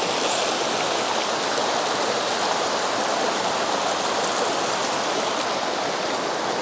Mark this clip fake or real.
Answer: real